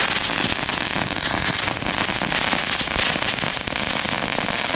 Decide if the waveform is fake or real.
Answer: real